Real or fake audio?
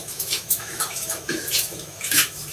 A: fake